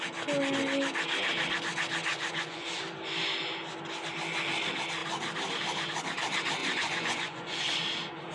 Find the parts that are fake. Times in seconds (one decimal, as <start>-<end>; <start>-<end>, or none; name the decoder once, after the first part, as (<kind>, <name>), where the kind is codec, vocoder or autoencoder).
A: 2.1-2.8 (vocoder, Vocos); 6.6-7.8